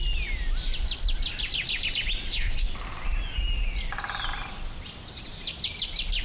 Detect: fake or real real